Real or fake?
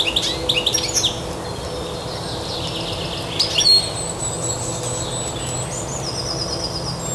real